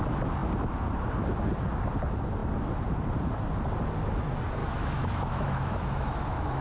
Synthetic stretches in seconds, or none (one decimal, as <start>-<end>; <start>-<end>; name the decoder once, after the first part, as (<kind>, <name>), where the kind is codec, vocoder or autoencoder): 4.6-6.6 (autoencoder, DAC-VAE)